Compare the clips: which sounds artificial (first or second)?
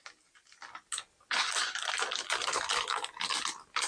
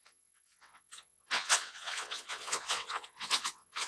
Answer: second